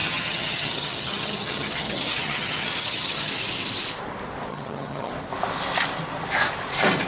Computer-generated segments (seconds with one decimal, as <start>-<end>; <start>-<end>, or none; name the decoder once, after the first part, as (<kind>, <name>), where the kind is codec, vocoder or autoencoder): 0.0-3.3 (vocoder, HiFi-GAN); 4.5-5.1